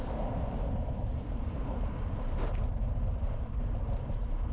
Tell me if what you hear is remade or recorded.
remade